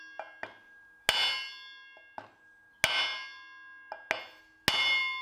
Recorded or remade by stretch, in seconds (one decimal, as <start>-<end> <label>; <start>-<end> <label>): 0.0-5.2 recorded